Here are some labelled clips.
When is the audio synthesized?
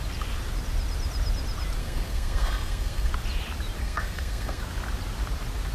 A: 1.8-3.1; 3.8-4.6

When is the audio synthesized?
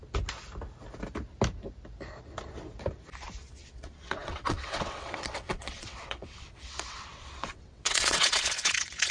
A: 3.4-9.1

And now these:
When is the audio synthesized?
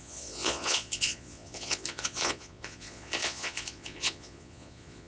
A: 0.0-5.1